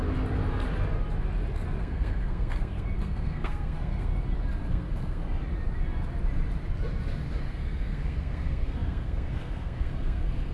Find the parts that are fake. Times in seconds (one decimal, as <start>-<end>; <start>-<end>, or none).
1.8-4.1; 4.7-5.2; 7.4-10.5